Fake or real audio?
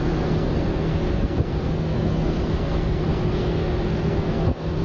fake